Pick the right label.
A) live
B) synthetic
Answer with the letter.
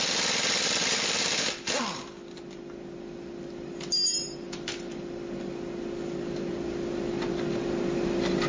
A